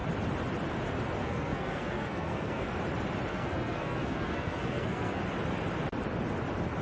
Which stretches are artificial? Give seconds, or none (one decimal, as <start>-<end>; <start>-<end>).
1.2-2.7; 3.3-5.2